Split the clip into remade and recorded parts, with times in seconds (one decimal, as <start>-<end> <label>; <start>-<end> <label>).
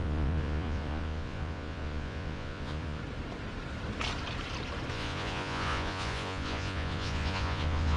0.0-3.0 remade; 3.0-4.9 recorded; 4.9-8.0 remade